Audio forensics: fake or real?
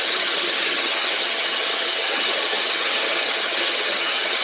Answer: fake